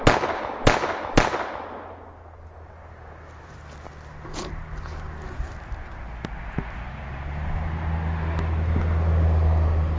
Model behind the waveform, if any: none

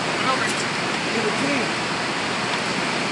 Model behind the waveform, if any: none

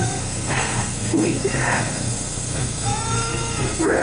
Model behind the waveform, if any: codec, SNAC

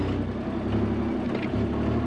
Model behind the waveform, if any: none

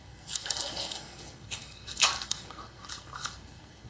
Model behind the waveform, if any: codec, SNAC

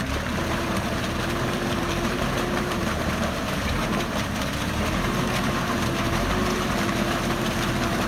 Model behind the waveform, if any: vocoder, BigVGAN v2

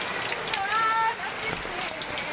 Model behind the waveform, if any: none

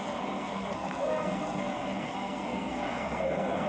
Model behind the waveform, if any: codec, SNAC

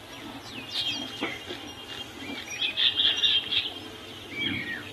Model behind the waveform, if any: none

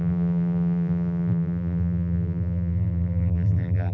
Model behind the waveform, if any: vocoder, BigVGAN v2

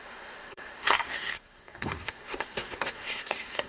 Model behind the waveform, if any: codec, SNAC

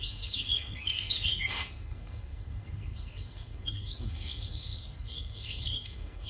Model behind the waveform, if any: codec, SNAC